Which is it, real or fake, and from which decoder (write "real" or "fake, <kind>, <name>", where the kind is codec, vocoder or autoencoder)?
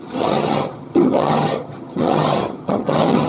fake, vocoder, HiFi-GAN